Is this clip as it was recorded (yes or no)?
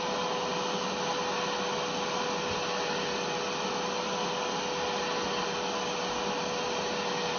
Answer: yes